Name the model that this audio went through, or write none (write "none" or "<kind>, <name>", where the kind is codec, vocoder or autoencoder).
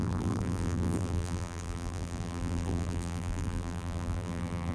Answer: vocoder, BigVGAN v2